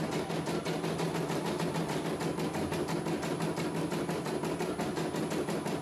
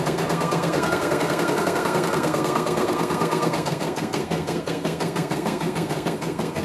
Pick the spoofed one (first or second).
second